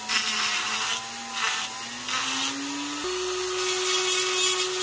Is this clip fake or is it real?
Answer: real